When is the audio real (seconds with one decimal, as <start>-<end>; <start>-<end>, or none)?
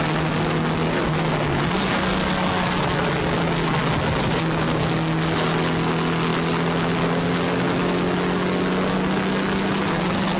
0.0-10.4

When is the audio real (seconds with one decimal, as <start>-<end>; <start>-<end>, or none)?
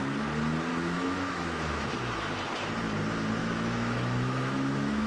0.0-0.7; 1.9-3.4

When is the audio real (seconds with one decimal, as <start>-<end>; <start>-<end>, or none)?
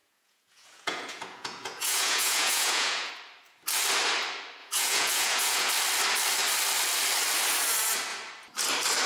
3.1-4.6; 5.7-9.1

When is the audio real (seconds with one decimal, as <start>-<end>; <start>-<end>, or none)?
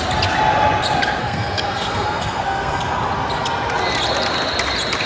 0.0-1.2; 2.8-5.1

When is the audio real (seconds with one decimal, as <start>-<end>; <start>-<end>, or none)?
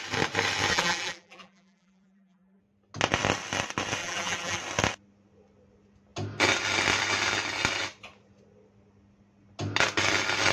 0.0-0.7; 2.6-4.0; 4.6-10.5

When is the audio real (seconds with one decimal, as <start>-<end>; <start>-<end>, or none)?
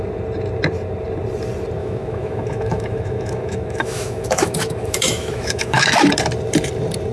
0.0-1.8; 6.1-7.1